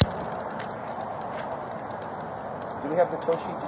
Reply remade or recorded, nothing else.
recorded